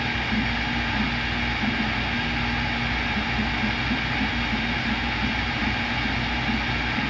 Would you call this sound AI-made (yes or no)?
no